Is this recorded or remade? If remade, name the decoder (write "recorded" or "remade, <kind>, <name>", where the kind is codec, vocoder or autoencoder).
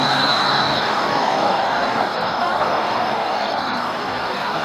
remade, codec, DAC